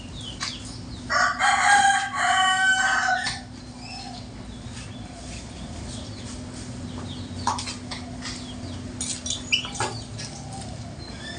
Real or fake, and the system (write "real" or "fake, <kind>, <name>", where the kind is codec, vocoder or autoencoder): real